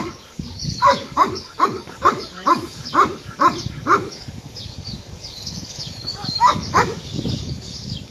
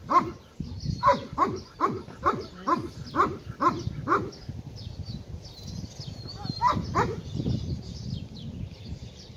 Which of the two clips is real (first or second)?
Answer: second